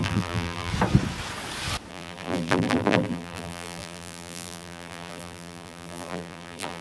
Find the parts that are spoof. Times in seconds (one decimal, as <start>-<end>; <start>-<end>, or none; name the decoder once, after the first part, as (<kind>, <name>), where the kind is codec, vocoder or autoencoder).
0.0-0.7 (vocoder, BigVGAN v2); 1.9-6.8